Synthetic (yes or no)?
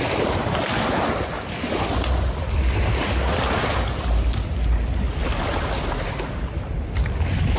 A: no